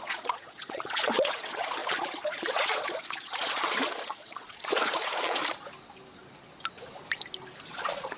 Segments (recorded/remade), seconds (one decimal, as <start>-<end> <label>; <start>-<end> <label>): 0.0-5.4 remade; 5.4-7.7 recorded; 7.7-8.2 remade